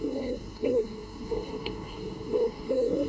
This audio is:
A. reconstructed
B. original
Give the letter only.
A